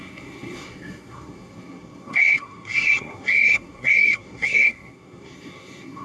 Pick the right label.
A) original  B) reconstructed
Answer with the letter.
B